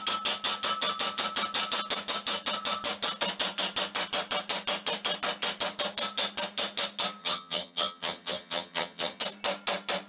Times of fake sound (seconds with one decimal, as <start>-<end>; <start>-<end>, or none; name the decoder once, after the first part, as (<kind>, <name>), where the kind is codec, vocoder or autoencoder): 7.2-9.2 (vocoder, HiFi-GAN)

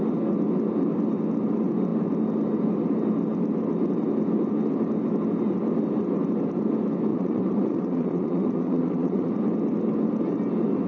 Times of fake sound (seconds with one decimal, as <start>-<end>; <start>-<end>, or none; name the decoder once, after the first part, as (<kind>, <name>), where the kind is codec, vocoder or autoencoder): 7.1-9.3 (vocoder, Vocos)

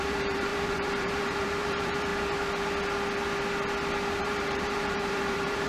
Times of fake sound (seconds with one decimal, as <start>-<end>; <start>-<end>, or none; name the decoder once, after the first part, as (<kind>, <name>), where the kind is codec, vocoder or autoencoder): 0.0-2.1 (vocoder, BigVGAN v2); 4.2-5.7

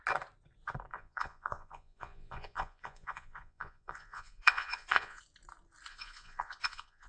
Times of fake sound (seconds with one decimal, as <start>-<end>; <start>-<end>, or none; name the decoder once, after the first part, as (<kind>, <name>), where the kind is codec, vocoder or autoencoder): 0.9-5.2 (vocoder, Vocos); 5.9-7.1

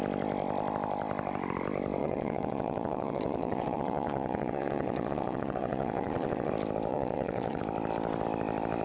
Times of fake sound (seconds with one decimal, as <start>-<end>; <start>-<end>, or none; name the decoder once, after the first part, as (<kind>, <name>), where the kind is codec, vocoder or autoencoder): 2.0-6.5 (vocoder, WaveNeXt); 6.9-7.6

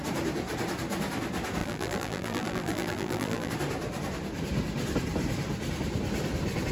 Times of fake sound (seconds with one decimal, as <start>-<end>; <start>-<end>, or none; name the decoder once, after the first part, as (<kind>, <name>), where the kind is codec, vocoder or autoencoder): 1.6-3.5 (vocoder, BigVGAN v2)

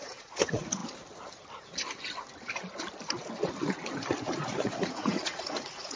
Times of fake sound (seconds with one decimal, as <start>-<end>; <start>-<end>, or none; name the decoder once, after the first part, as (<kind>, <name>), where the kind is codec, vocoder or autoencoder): 0.0-0.8 (vocoder, Vocos); 4.2-6.0